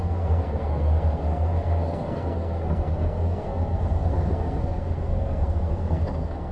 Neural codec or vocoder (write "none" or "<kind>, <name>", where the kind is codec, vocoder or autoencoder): codec, SNAC